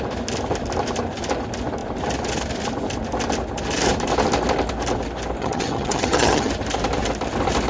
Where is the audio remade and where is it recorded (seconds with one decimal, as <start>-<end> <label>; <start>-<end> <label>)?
0.0-5.4 recorded; 5.4-6.5 remade; 6.5-7.7 recorded